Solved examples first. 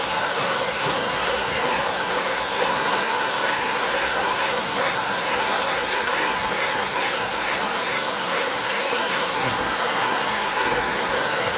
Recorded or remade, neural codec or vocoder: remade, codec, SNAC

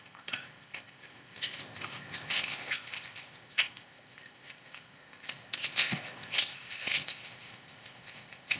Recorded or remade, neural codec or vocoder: remade, codec, ZipCodec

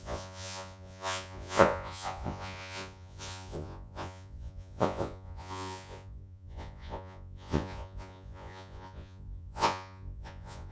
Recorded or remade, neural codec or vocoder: remade, vocoder, Vocos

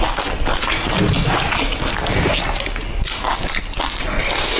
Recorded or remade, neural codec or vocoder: recorded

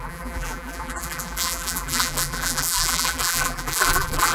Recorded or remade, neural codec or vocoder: remade, vocoder, BigVGAN v2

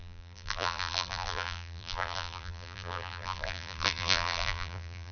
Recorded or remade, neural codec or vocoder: remade, vocoder, BigVGAN v2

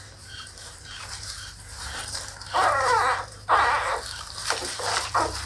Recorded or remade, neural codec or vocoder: remade, vocoder, BigVGAN v2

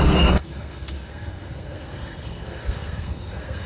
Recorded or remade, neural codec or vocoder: remade, codec, SNAC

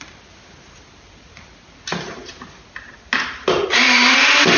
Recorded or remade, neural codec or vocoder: recorded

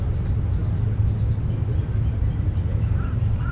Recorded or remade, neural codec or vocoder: recorded